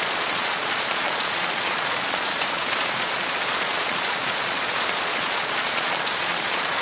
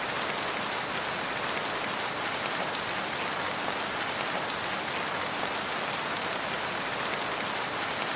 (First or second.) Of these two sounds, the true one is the second